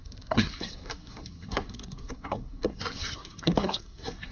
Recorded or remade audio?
remade